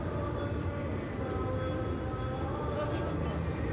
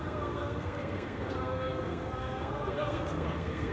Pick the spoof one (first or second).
second